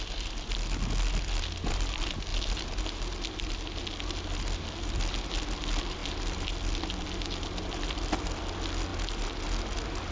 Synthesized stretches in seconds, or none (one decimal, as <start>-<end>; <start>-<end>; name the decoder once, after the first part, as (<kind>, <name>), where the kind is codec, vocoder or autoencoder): none